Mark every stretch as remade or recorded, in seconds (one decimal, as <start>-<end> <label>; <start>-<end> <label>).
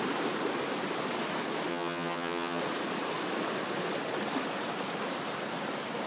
0.0-1.7 recorded; 1.7-2.6 remade; 2.6-6.1 recorded